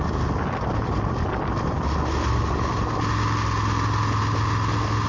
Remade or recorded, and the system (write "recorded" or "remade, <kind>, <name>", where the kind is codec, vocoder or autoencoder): recorded